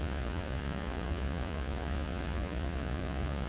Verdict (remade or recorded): remade